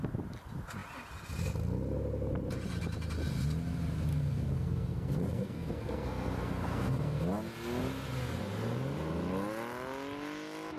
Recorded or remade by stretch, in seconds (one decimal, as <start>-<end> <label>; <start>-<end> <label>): 0.0-4.1 recorded; 4.1-7.2 remade; 7.2-10.8 recorded